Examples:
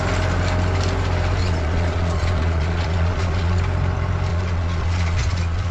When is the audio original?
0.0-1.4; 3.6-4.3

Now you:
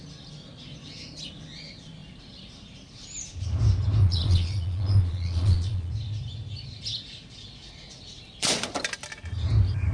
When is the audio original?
0.0-4.0; 5.9-9.9

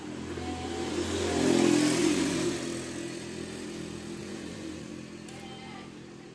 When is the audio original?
0.0-2.0; 2.6-4.2; 4.9-6.3

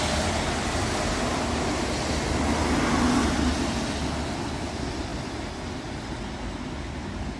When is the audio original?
0.0-7.4